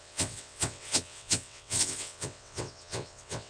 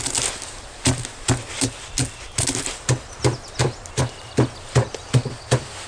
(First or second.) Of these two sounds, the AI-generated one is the first